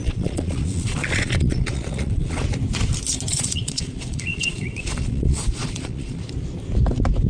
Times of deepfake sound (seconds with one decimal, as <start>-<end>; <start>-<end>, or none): 0.0-2.4; 3.3-6.3